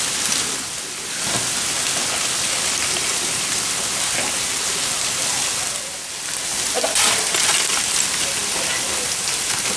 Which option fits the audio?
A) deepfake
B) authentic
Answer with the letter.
B